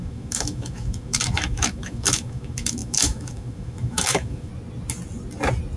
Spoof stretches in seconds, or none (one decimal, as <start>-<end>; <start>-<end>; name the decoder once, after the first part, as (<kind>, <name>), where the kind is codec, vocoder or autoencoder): 0.0-4.5 (autoencoder, DAC-VAE)